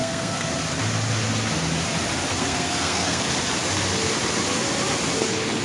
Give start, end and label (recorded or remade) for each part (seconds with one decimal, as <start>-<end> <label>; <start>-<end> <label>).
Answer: 0.0-0.5 remade; 0.5-2.3 recorded; 2.3-3.2 remade; 3.2-5.6 recorded